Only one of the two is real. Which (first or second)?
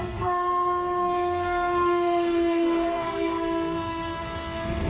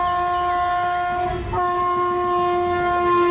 second